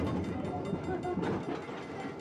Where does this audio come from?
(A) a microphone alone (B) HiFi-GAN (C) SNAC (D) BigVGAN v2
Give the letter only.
A